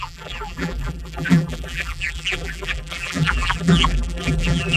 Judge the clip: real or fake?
fake